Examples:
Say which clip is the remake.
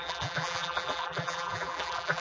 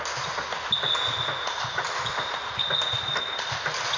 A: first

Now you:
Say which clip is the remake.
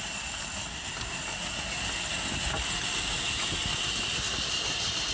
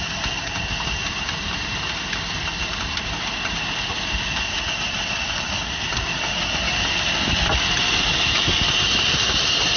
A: second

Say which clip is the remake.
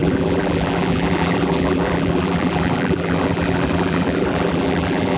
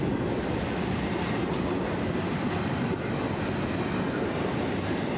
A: first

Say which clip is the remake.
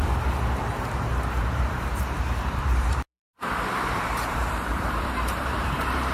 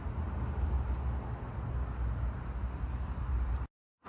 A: first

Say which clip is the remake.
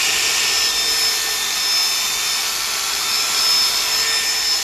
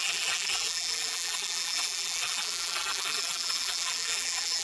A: second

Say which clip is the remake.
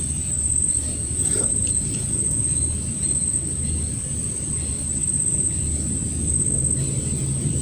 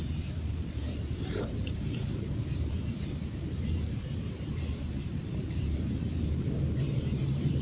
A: second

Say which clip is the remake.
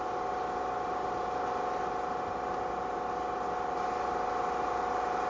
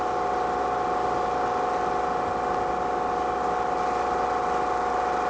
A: first